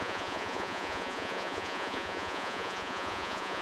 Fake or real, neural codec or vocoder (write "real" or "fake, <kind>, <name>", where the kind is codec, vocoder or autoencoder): fake, vocoder, Vocos